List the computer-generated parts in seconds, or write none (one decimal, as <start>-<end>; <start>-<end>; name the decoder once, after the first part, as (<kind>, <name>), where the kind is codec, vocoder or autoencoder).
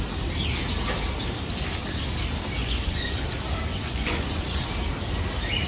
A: 2.6-3.2 (vocoder, Vocos); 3.7-4.7